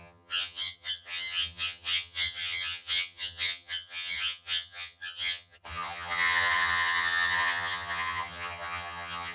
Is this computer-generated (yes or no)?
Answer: yes